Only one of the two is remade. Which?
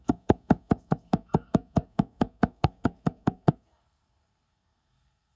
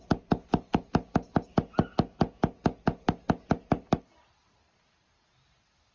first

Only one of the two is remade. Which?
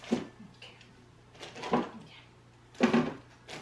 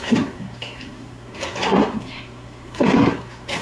second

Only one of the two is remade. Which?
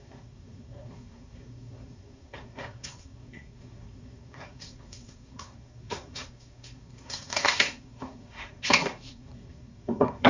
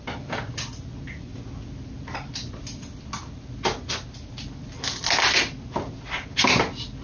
first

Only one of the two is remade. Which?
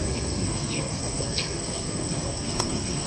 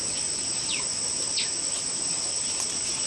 first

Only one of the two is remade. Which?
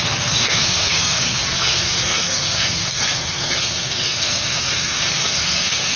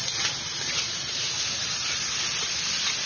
first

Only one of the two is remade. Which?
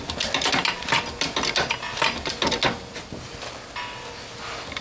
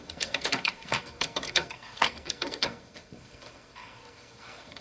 second